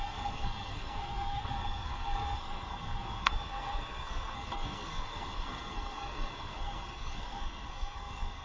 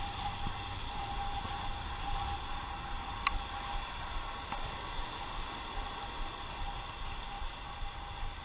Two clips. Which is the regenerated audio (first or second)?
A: first